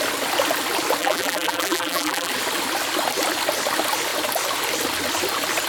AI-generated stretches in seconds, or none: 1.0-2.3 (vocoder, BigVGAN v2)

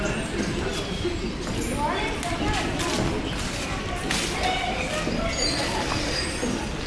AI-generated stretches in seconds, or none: none

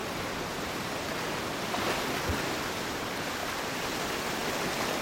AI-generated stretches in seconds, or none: none

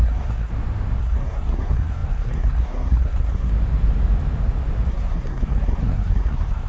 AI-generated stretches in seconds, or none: 0.0-0.5 (codec, SNAC); 1.0-3.5; 4.9-6.7

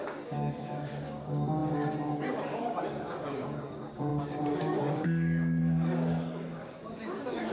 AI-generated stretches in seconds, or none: 0.0-7.5 (codec, DAC)

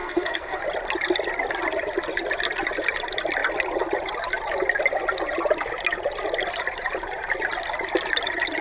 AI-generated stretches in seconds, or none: 0.0-0.6 (codec, SNAC)

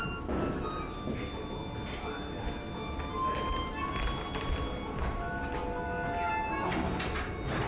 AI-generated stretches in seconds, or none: none